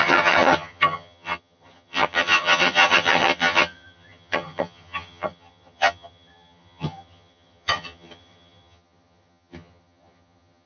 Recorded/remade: remade